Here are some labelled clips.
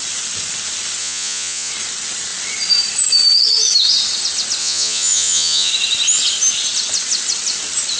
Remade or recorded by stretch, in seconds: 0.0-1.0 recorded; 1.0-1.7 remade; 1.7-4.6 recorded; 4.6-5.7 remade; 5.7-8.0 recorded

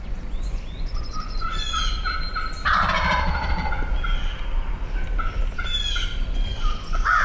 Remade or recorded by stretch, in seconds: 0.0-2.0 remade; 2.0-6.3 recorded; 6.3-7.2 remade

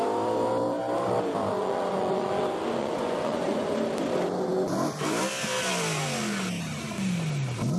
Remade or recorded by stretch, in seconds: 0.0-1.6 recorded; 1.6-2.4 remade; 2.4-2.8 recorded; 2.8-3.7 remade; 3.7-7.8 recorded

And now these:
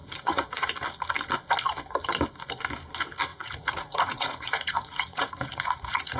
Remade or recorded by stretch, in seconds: 0.0-0.7 remade; 0.7-3.3 recorded; 3.3-6.2 remade